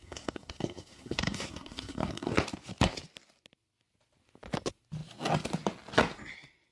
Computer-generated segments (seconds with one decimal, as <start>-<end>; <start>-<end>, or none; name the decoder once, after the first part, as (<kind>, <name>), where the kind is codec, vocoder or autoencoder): 0.0-2.3 (codec, SNAC)

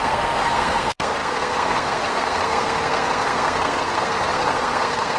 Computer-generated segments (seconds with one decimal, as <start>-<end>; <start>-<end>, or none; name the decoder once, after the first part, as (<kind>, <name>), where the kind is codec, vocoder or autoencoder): 0.0-5.2 (codec, SNAC)

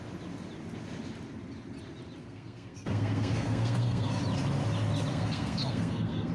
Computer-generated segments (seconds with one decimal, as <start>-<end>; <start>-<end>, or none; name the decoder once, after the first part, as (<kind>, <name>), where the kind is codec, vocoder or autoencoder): 2.2-4.2 (codec, SNAC); 5.1-6.3

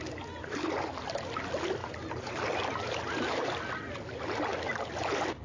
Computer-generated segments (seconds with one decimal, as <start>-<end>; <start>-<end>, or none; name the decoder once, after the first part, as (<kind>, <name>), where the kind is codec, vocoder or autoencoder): none

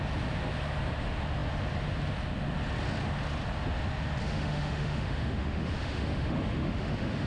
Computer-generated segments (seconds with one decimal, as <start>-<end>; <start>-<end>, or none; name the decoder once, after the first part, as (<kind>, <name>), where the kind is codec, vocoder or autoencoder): 4.2-7.3 (autoencoder, DAC-VAE)

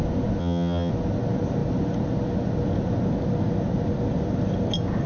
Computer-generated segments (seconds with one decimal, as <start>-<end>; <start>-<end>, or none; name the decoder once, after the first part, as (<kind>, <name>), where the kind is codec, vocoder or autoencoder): 0.4-0.9 (vocoder, HiFi-GAN)

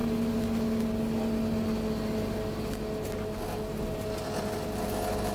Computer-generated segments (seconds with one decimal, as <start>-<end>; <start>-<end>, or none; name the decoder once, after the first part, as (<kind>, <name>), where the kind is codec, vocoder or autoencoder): none

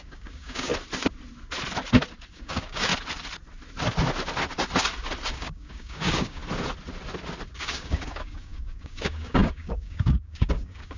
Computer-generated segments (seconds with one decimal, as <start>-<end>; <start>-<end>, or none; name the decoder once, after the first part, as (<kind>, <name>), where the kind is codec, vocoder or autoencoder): 0.0-0.7 (codec, DAC); 2.3-2.9; 5.3-6.4; 7.6-11.0